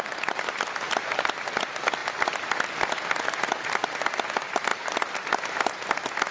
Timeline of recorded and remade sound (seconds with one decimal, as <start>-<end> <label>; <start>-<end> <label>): 0.0-6.3 recorded